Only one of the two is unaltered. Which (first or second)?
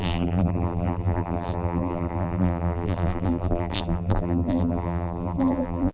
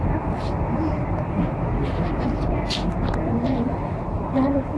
second